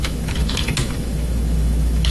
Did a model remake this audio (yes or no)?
yes